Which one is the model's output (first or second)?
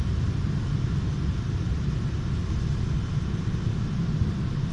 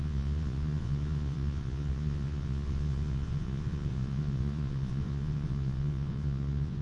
second